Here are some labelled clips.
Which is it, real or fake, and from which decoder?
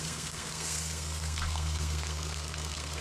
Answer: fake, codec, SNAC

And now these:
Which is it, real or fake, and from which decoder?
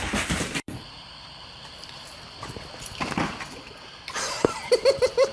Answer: fake, vocoder, BigVGAN v2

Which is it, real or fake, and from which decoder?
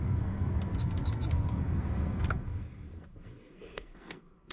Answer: fake, codec, SNAC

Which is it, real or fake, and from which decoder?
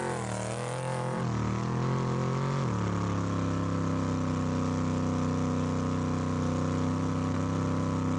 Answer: real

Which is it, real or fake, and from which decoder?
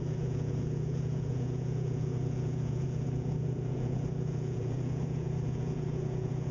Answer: fake, vocoder, Vocos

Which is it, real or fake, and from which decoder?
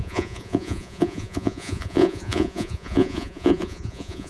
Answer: fake, vocoder, Vocos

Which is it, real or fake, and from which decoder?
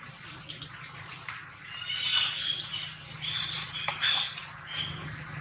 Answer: real